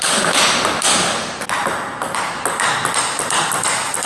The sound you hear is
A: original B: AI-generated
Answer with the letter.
A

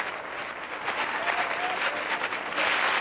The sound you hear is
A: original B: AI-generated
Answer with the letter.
A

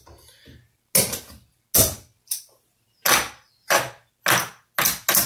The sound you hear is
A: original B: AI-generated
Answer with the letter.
A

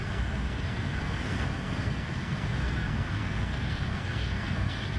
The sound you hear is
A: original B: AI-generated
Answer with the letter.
B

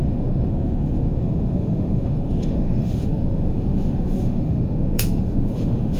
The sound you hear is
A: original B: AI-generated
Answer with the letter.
B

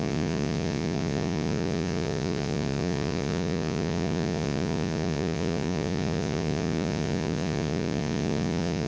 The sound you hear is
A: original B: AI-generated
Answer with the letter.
B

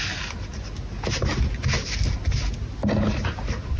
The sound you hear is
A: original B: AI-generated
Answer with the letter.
A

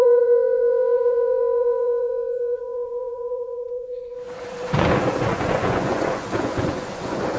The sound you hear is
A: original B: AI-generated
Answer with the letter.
B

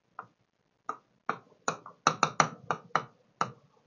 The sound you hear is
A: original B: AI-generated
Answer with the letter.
A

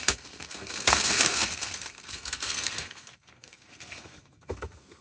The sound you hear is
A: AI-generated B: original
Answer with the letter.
A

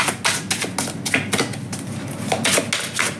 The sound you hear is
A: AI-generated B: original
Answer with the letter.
B